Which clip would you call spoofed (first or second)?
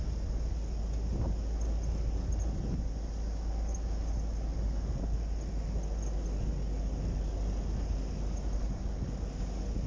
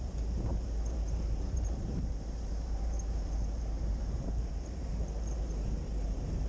second